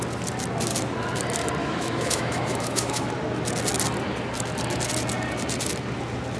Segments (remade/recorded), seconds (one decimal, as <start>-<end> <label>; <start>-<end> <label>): 0.0-1.6 recorded; 1.6-3.1 remade; 3.1-6.4 recorded